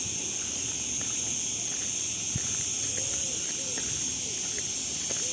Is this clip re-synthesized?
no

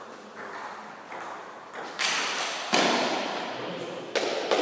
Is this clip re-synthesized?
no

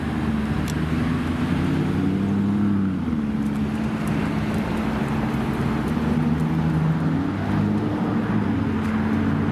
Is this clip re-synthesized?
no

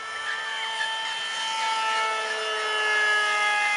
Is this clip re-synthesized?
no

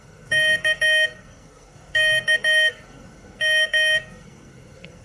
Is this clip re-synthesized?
yes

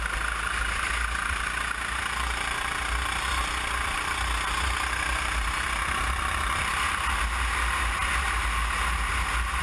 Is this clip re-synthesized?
no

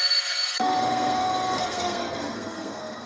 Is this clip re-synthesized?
yes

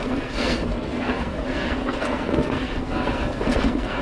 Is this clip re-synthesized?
yes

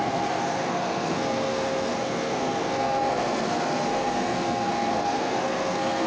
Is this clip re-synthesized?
yes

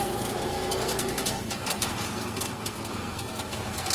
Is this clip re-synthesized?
yes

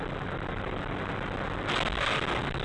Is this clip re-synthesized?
no